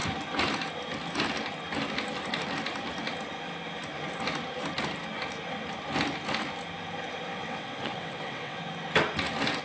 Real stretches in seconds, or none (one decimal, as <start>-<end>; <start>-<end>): 0.0-7.3; 8.6-9.6